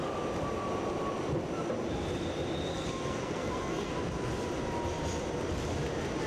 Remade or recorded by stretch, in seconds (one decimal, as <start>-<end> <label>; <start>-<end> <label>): 0.0-2.7 recorded; 2.7-3.9 remade; 3.9-6.3 recorded